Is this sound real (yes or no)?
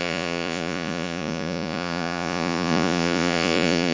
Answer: no